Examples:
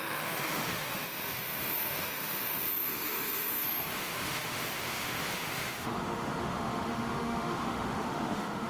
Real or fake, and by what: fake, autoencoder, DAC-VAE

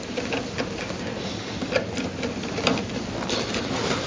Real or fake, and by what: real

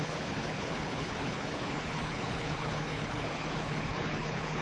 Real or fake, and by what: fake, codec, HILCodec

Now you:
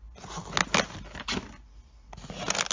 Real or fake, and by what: real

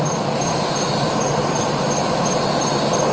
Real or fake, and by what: real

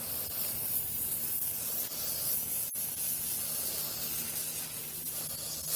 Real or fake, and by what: real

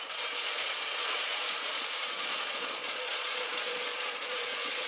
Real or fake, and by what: fake, vocoder, Vocos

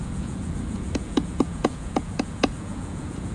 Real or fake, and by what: fake, vocoder, Vocos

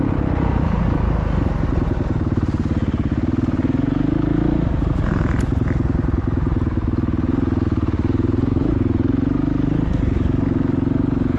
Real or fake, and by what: real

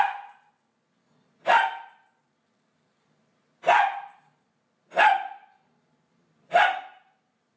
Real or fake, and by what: real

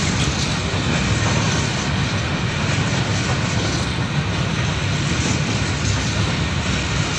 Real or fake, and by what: real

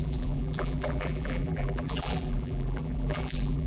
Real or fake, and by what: fake, vocoder, BigVGAN v2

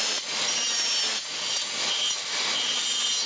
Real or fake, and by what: real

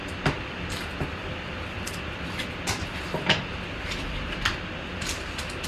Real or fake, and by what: real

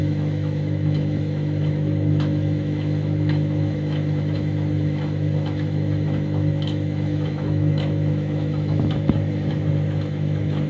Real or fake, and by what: fake, autoencoder, DAC-VAE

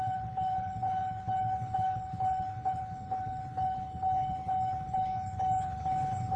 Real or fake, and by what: fake, codec, HILCodec